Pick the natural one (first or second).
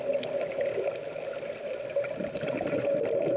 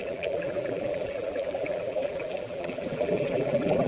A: first